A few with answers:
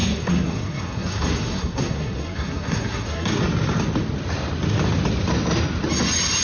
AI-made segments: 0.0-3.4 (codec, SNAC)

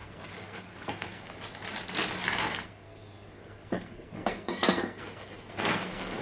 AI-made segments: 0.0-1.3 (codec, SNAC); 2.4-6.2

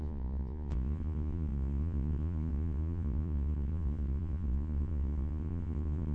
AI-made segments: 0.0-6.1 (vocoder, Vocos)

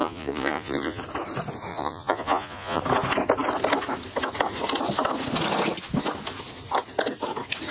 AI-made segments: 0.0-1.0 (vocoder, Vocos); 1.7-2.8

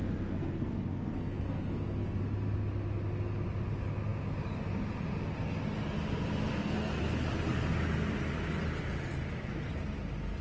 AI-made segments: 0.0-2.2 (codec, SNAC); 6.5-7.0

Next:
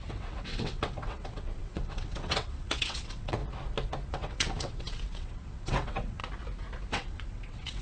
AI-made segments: 0.0-3.4 (vocoder, WaveNeXt); 4.1-6.2; 6.9-7.8

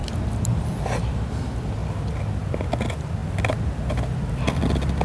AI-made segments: 0.0-1.3 (vocoder, BigVGAN v2)